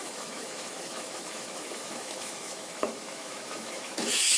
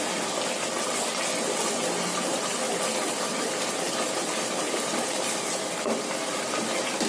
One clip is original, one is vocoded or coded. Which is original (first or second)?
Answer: second